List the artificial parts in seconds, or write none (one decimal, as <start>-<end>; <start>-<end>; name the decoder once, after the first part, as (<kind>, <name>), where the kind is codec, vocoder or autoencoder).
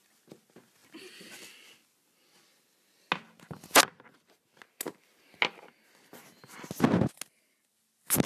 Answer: none